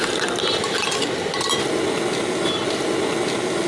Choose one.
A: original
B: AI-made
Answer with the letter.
A